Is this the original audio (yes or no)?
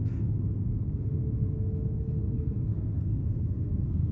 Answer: no